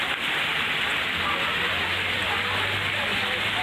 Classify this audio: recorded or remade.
recorded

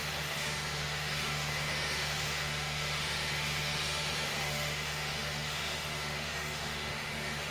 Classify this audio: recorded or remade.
remade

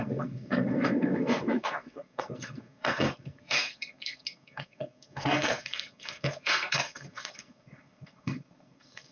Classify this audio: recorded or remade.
remade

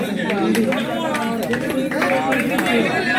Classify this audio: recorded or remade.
recorded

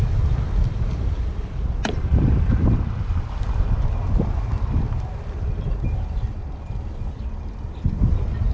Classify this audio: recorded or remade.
recorded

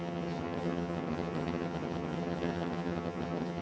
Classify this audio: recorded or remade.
remade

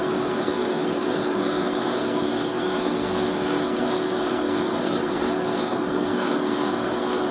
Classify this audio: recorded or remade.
remade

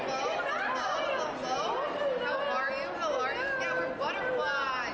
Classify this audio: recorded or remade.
recorded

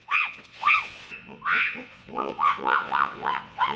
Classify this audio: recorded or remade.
remade